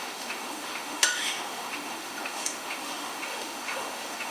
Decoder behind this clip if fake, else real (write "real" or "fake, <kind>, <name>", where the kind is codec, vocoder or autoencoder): fake, autoencoder, DAC-VAE